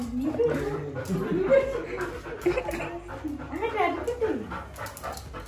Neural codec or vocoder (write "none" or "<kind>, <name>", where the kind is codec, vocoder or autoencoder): none